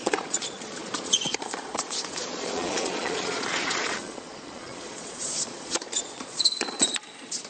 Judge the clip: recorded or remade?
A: remade